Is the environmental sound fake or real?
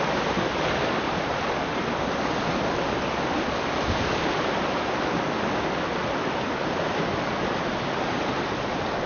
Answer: real